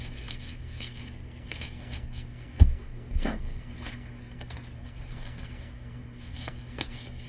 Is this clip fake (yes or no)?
yes